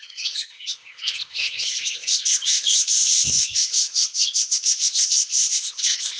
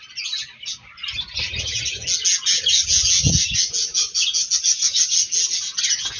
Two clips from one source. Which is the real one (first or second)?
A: second